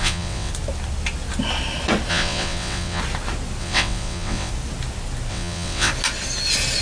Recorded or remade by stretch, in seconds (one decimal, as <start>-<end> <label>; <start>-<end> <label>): 0.0-0.5 remade; 0.5-2.1 recorded; 2.1-3.0 remade; 3.0-3.6 recorded; 3.6-4.5 remade; 4.5-5.3 recorded; 5.3-5.9 remade; 5.9-6.8 recorded